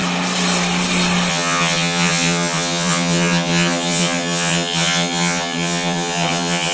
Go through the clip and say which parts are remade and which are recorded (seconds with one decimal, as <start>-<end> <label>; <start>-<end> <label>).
0.0-1.3 recorded; 1.3-6.7 remade